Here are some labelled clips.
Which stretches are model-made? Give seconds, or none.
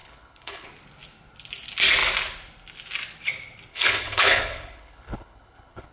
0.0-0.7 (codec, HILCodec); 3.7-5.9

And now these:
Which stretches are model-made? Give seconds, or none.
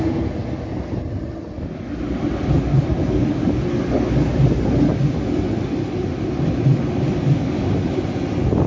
none